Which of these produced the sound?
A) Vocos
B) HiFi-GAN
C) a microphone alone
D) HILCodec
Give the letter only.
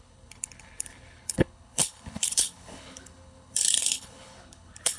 D